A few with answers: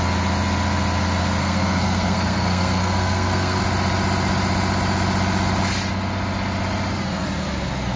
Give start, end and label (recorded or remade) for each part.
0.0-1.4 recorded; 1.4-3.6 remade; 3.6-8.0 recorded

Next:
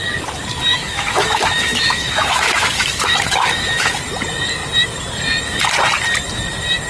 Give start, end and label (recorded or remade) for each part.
0.0-0.7 recorded; 0.7-4.0 remade; 4.0-6.9 recorded